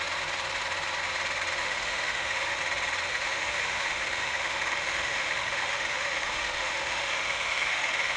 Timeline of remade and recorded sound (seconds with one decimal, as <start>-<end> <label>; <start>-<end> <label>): 0.0-1.6 recorded; 1.6-2.6 remade; 2.6-3.1 recorded; 3.1-8.2 remade